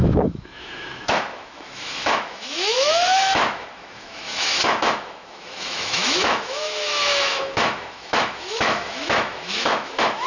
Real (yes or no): no